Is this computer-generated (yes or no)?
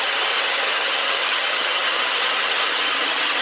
yes